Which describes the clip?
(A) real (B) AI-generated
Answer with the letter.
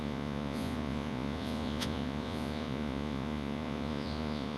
B